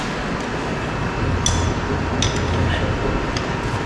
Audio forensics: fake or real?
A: real